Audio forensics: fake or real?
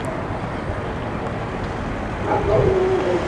real